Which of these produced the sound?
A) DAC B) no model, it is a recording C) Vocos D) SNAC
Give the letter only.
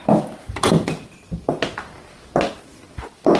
B